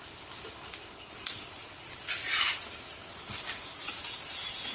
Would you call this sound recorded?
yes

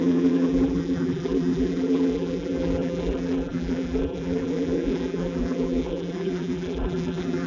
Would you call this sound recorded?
no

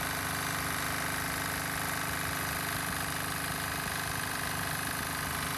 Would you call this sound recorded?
yes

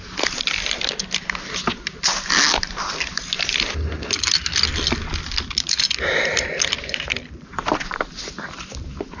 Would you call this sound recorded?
yes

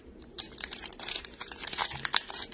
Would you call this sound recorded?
no